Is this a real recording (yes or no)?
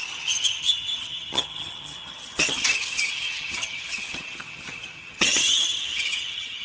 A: no